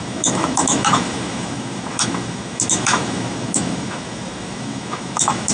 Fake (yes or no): yes